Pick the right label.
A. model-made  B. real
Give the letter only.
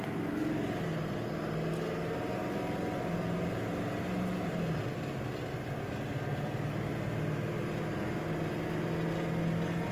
B